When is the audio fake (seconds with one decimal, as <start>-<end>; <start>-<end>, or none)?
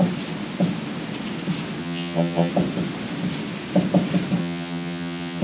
1.8-2.5; 4.4-5.4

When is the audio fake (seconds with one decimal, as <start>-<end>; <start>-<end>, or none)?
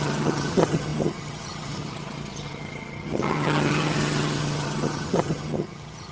0.0-6.1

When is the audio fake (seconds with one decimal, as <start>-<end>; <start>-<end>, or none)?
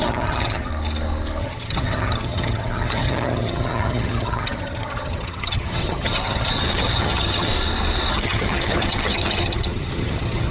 0.0-0.7; 1.4-7.5; 8.1-10.5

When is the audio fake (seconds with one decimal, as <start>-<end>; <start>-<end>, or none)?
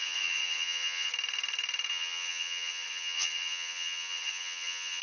0.0-1.1; 1.9-5.0